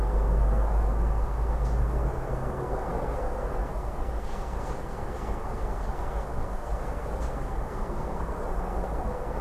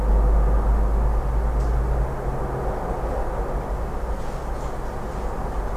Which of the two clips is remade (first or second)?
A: first